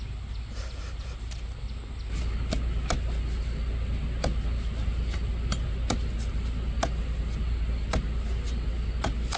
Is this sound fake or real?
real